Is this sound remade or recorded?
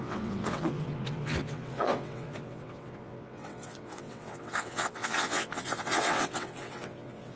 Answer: remade